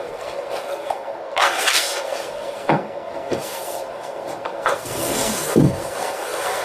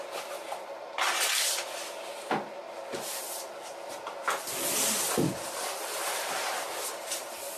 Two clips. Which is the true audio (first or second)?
second